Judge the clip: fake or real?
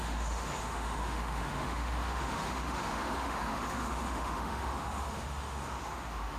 fake